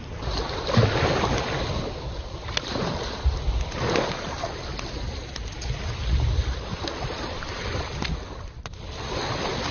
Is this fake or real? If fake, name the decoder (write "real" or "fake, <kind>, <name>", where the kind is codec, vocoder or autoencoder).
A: real